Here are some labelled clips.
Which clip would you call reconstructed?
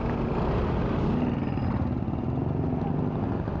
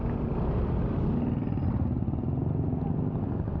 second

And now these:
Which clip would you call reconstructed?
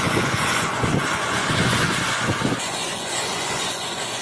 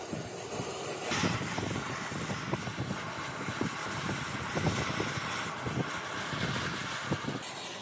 first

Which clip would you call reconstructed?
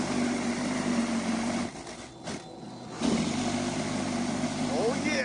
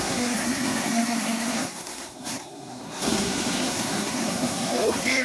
second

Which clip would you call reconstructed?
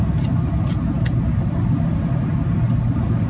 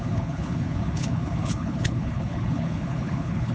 second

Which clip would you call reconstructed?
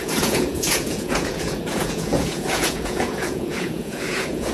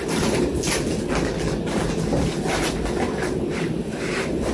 first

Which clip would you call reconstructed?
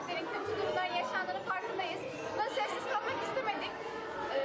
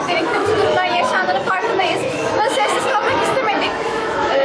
second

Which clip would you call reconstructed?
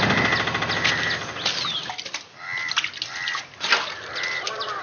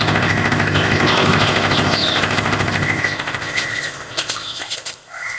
second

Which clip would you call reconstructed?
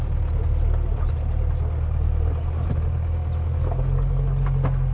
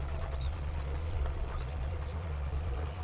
second